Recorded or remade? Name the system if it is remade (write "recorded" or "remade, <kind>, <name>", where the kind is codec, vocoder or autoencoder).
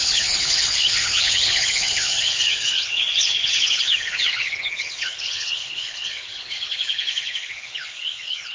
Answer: remade, codec, HILCodec